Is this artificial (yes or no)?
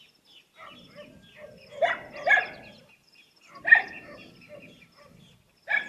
no